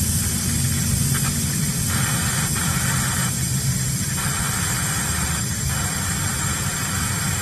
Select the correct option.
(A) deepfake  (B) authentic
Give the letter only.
B